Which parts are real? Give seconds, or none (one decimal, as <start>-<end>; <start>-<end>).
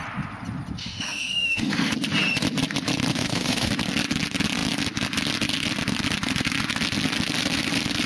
0.0-0.8; 1.9-3.1; 3.7-8.1